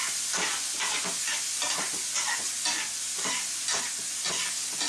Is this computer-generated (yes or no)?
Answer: no